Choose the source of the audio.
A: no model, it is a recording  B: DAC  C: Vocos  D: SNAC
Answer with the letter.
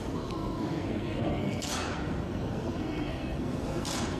D